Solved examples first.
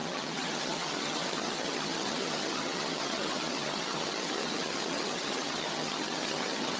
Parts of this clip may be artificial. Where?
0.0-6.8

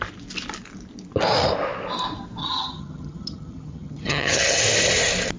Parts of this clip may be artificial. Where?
2.4-4.6

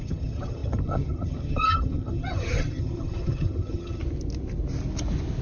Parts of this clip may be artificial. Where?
0.0-4.0

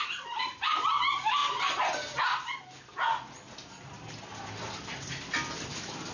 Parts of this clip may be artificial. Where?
none

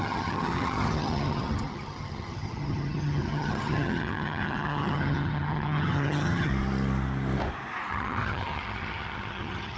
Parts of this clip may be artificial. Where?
0.0-6.5; 7.9-9.8